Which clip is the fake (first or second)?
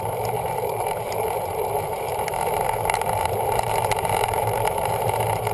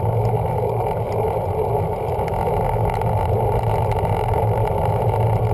first